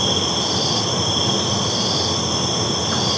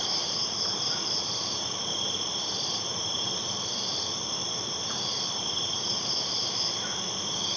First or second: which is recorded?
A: first